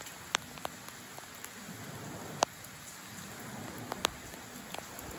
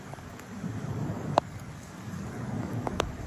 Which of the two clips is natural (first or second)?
first